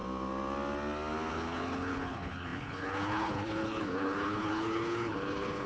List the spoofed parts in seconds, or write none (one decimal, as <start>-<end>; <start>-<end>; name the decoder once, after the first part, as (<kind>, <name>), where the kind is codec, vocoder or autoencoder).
1.3-5.7 (codec, HILCodec)